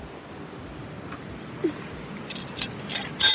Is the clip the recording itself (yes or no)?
yes